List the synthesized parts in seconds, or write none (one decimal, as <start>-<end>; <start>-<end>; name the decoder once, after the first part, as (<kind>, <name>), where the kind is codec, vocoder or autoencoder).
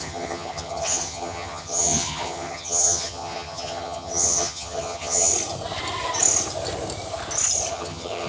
0.0-5.3 (vocoder, HiFi-GAN); 7.7-8.3